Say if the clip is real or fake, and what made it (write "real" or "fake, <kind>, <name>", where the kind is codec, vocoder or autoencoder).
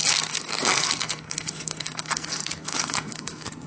fake, codec, SNAC